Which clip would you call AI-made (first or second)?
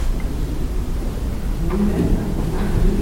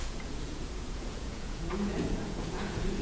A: second